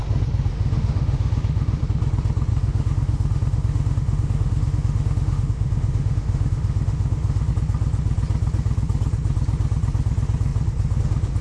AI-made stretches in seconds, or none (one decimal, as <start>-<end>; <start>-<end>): 0.5-1.8; 2.5-7.5